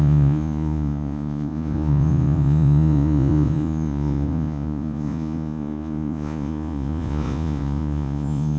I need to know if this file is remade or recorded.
remade